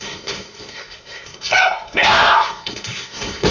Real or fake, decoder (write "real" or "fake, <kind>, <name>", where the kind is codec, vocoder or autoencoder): fake, codec, SNAC